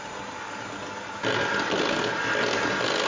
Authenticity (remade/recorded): recorded